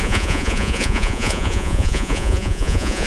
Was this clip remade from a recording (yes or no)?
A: yes